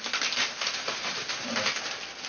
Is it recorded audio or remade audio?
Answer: recorded